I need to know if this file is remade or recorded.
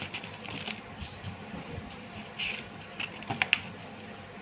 recorded